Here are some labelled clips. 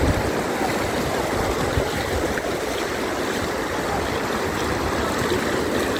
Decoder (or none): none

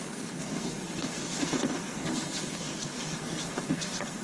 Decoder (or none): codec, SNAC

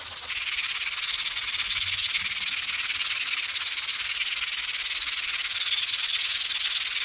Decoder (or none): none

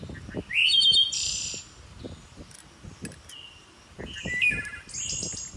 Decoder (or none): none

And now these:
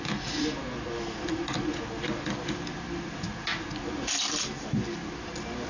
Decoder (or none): none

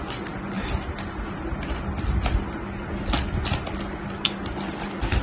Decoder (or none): none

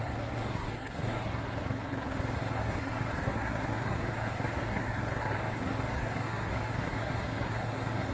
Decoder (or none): codec, SNAC